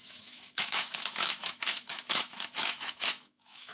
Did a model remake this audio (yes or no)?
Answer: yes